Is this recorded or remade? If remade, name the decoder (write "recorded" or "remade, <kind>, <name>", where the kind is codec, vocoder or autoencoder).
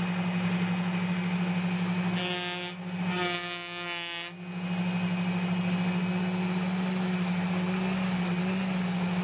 recorded